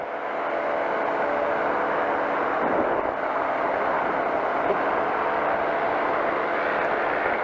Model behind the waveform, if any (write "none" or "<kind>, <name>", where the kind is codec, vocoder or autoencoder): none